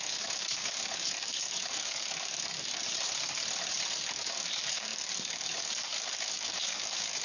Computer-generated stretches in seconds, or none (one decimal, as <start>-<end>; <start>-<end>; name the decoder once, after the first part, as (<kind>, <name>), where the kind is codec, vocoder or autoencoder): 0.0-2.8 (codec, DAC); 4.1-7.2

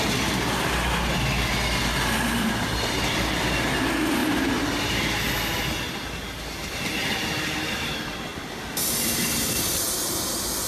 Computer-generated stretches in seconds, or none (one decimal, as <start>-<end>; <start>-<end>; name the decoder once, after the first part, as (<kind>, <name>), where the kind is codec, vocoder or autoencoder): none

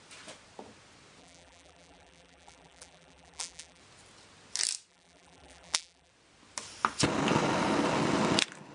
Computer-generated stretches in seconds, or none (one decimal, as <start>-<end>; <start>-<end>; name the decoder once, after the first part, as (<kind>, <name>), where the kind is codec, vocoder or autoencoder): 1.2-3.8 (vocoder, BigVGAN v2); 4.9-6.1

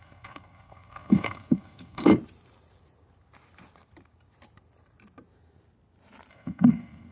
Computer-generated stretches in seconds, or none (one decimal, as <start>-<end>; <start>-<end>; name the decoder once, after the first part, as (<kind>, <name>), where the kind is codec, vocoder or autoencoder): 0.0-2.1 (codec, SNAC); 6.3-7.1